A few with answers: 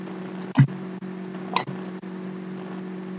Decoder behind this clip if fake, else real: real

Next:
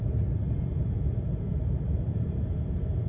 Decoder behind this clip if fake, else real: fake, vocoder, BigVGAN v2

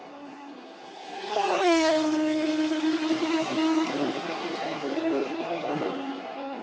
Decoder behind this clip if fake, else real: fake, codec, SNAC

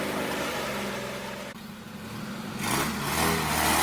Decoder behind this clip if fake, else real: real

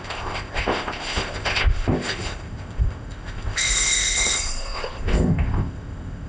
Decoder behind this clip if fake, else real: fake, codec, ZipCodec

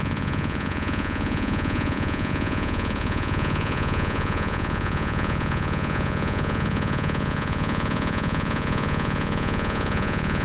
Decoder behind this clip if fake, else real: fake, vocoder, Vocos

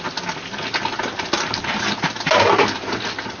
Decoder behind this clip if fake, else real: real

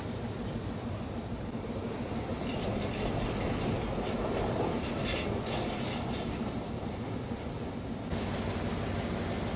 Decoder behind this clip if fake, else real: real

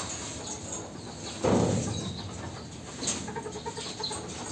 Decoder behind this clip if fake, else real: real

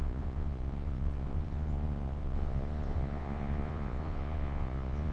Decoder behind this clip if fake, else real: fake, vocoder, Vocos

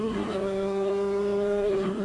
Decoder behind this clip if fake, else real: fake, codec, SNAC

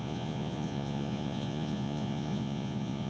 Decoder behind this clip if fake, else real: fake, vocoder, Vocos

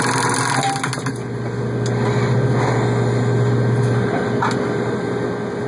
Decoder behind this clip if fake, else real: real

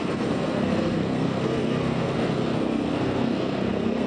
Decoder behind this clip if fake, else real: fake, codec, SNAC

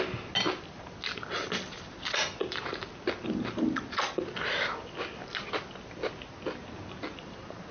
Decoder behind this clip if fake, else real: real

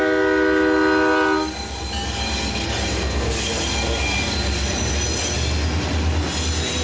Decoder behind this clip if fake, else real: real